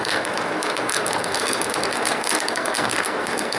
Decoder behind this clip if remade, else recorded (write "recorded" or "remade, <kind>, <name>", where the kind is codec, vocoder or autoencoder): remade, codec, SNAC